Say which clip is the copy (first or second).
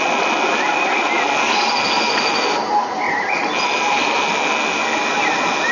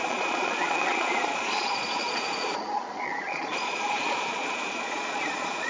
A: second